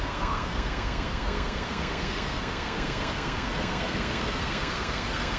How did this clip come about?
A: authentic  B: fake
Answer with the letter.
B